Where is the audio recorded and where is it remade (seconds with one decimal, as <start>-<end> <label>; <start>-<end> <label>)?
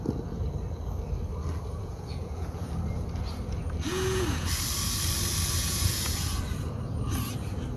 0.0-1.8 recorded; 1.8-2.7 remade; 2.7-3.9 recorded; 3.9-4.5 remade; 4.5-5.6 recorded; 5.6-6.4 remade; 6.4-7.8 recorded